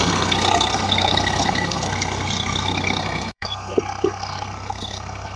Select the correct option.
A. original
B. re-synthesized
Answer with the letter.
B